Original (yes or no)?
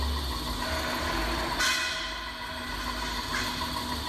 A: yes